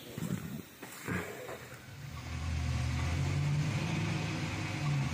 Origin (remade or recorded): recorded